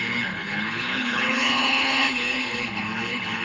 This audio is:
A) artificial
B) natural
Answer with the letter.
A